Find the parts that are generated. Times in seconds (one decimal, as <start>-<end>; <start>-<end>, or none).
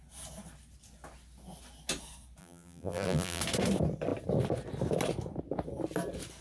2.4-3.4